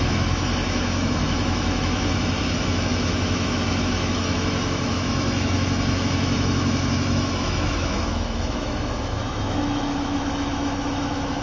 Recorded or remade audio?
remade